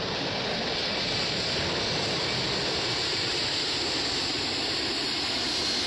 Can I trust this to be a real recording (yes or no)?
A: yes